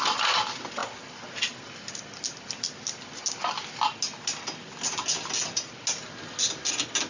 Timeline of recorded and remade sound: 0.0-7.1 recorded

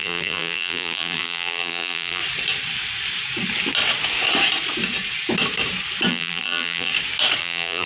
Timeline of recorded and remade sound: 0.0-2.2 remade; 2.2-6.1 recorded; 6.1-6.9 remade; 6.9-7.4 recorded; 7.4-7.9 remade

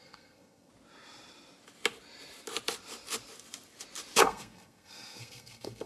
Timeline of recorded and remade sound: 0.0-0.7 remade; 0.7-4.2 recorded; 4.2-5.9 remade

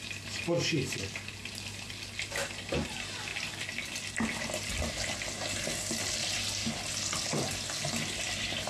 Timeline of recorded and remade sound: 0.0-8.7 recorded

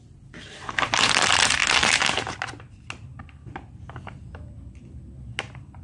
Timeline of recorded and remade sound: 0.0-5.8 recorded

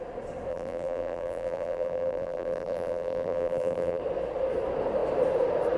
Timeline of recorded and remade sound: 0.0-0.5 recorded; 0.5-4.0 remade; 4.0-5.8 recorded